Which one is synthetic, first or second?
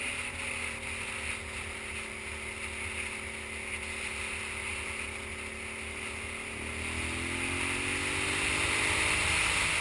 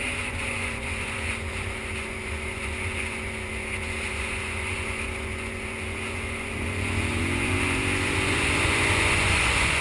second